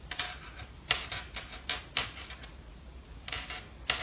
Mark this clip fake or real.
real